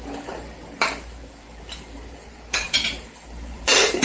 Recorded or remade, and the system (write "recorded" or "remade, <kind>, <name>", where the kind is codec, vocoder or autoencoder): remade, vocoder, BigVGAN v2